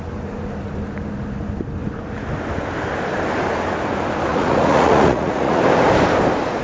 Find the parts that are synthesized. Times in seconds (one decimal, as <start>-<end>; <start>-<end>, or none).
4.3-5.6